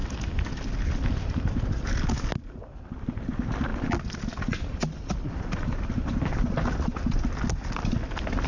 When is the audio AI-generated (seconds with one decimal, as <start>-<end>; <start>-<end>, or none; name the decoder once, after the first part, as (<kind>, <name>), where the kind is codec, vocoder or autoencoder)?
none